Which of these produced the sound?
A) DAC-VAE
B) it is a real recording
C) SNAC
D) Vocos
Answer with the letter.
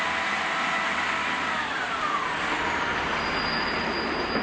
B